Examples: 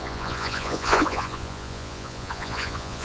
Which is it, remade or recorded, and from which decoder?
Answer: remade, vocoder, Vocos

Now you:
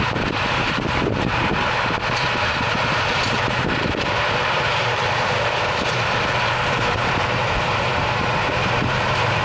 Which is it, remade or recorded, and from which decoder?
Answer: remade, vocoder, BigVGAN v2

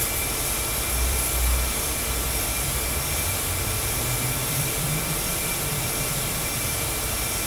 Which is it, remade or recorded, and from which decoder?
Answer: remade, vocoder, BigVGAN v2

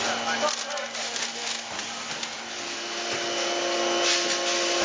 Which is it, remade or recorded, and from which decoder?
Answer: recorded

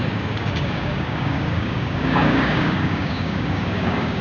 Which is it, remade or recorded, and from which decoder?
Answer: remade, codec, DAC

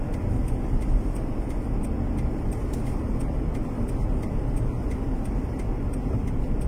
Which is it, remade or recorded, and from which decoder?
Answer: recorded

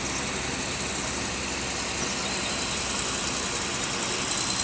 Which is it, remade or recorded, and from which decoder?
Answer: recorded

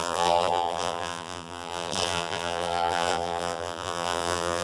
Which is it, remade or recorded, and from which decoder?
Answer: remade, vocoder, BigVGAN v2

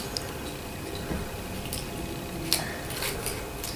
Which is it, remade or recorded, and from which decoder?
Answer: recorded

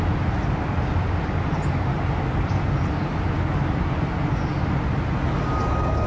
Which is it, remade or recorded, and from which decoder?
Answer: recorded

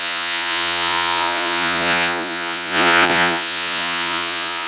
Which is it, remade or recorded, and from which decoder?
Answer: remade, vocoder, Vocos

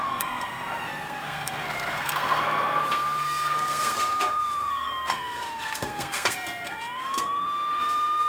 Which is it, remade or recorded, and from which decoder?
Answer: remade, codec, SNAC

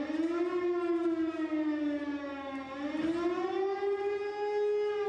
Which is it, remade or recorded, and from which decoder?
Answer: recorded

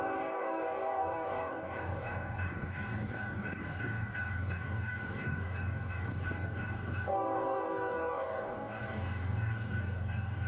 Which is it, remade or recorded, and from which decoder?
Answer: remade, codec, DAC